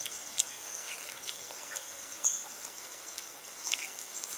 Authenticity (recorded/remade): remade